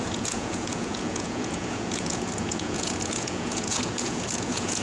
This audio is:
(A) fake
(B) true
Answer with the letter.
A